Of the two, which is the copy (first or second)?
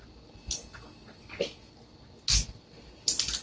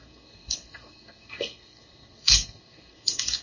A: second